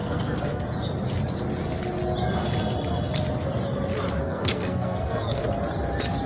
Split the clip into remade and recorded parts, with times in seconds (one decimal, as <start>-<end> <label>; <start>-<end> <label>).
0.0-0.6 remade; 0.6-4.2 recorded; 4.2-5.4 remade; 5.4-6.3 recorded